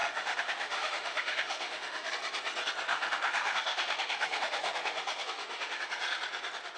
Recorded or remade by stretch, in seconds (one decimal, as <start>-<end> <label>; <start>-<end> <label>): 0.0-2.1 remade; 2.1-2.9 recorded; 2.9-5.8 remade; 5.8-6.8 recorded